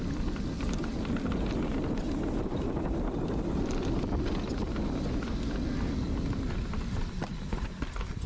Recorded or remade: recorded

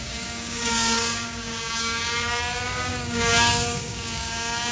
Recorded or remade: remade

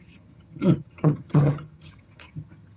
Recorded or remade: remade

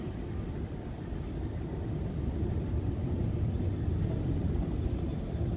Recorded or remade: recorded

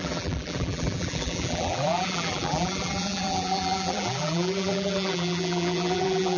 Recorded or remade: remade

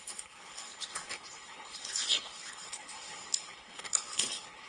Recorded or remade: remade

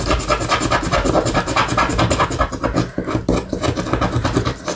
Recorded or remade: recorded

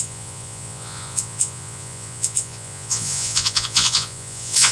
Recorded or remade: remade